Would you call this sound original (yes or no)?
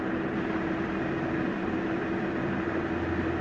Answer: yes